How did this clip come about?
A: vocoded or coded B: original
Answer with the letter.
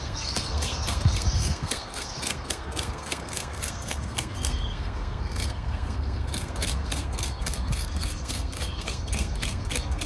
A